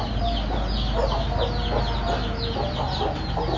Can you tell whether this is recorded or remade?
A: recorded